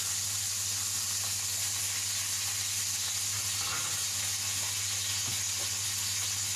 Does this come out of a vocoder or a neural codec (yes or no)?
no